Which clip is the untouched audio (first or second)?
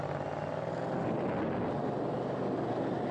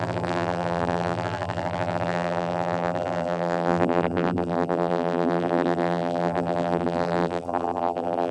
first